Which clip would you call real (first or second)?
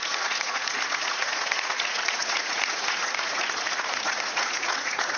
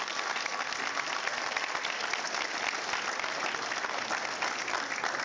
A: second